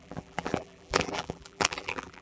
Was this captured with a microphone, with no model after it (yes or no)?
no